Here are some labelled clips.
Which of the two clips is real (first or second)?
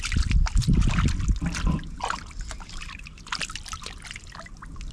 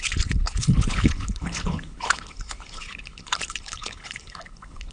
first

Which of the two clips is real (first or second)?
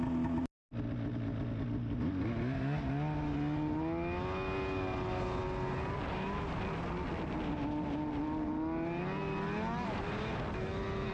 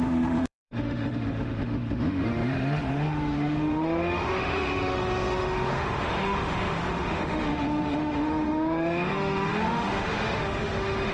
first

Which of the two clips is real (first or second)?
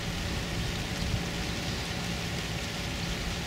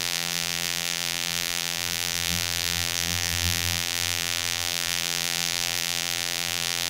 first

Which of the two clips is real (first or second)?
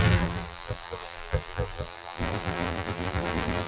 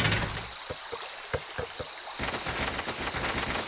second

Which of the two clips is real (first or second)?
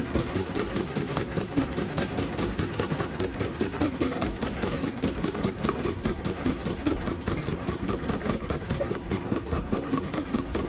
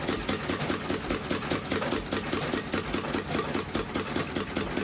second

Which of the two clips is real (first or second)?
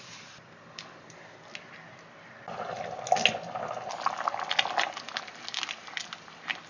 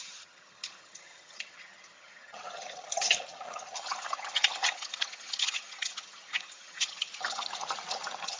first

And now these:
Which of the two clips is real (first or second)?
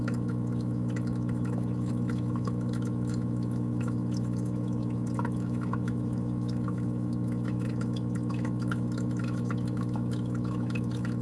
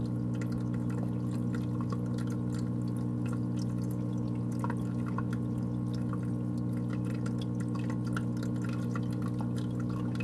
second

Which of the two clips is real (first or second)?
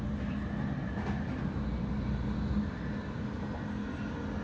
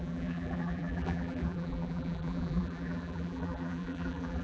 first